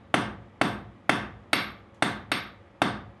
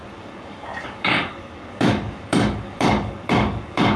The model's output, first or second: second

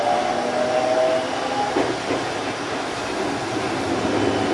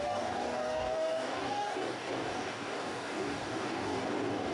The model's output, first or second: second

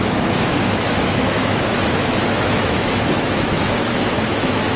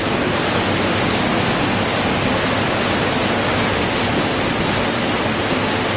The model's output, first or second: first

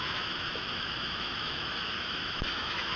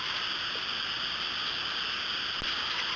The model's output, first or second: first